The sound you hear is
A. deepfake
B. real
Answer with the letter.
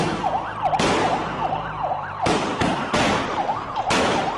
B